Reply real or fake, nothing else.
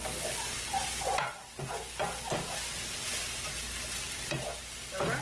real